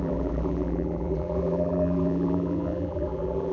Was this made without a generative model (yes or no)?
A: no